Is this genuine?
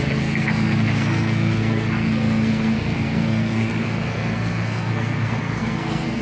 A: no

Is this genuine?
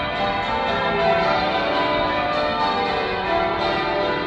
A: yes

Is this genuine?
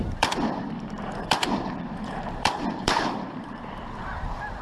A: no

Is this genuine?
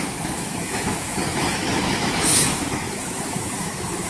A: no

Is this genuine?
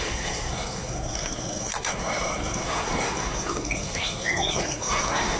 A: no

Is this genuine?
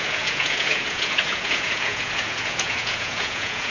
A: no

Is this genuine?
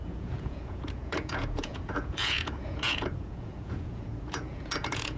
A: no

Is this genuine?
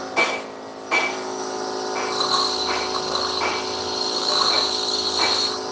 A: yes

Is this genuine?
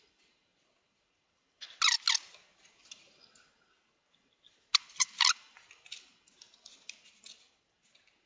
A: yes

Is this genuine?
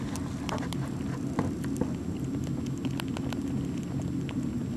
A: yes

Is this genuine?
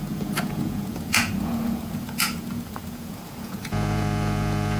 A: no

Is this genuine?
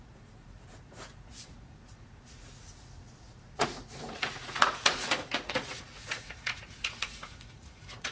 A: no